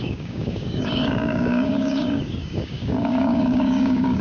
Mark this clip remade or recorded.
remade